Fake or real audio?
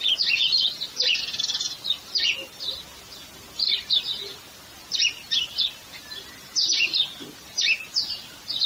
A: real